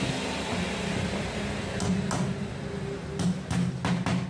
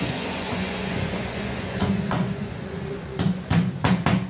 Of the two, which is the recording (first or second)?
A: first